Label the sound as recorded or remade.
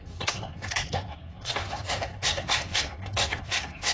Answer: remade